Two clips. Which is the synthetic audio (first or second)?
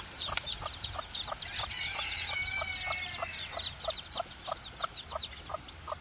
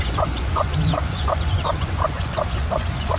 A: second